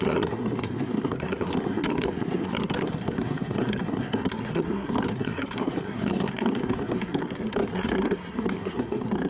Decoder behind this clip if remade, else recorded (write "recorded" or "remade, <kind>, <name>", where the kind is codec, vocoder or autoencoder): remade, codec, SNAC